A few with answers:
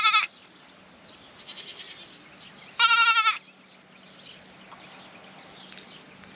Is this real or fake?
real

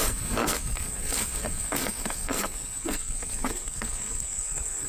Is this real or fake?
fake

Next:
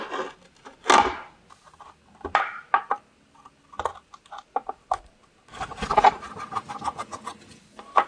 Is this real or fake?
real